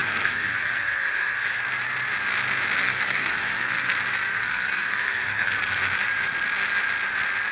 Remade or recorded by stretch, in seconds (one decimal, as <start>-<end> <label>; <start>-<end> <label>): 0.0-1.6 remade; 1.6-2.8 recorded; 2.8-3.9 remade; 3.9-4.3 recorded; 4.3-5.5 remade; 5.5-7.5 recorded